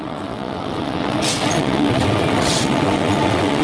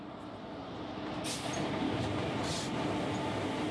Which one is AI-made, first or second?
first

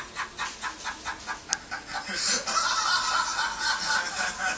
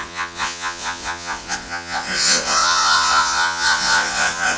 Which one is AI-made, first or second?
second